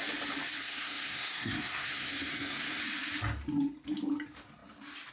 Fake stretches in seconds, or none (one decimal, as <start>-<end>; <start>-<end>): 0.6-2.8